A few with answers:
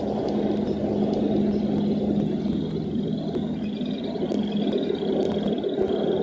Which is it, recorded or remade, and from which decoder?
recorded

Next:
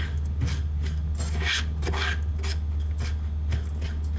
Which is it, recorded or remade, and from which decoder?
recorded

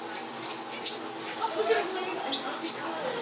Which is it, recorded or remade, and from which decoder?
recorded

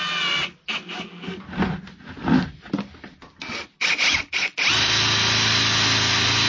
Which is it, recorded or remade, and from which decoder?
recorded